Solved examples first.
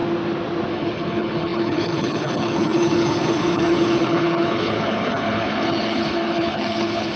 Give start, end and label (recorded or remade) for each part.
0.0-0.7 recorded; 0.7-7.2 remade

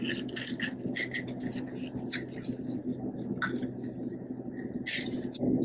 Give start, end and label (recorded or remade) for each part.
0.0-5.6 recorded

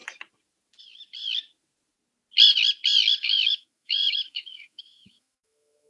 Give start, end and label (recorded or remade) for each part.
0.0-3.2 recorded; 3.2-5.9 remade

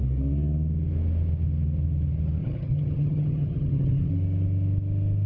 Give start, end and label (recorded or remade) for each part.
0.0-2.4 recorded; 2.4-4.1 remade; 4.1-5.3 recorded

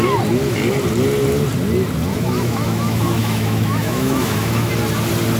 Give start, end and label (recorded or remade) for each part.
0.0-2.1 recorded; 2.1-4.7 remade; 4.7-5.4 recorded

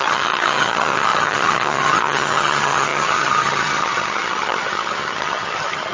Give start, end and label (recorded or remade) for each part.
0.0-5.9 remade